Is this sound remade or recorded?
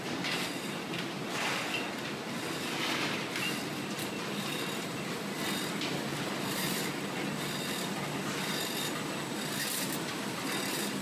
recorded